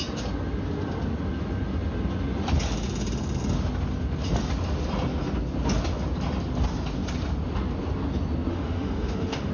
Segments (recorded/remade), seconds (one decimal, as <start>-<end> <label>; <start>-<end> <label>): 0.0-8.5 recorded; 8.5-9.5 remade